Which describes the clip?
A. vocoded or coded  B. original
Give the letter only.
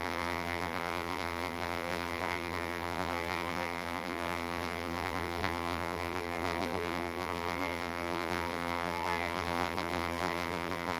A